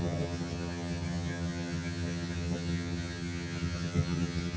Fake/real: fake